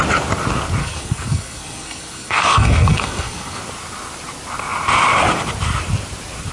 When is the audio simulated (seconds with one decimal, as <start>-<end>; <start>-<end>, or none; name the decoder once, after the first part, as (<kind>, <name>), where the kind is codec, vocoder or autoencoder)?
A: 0.8-3.6 (codec, SNAC)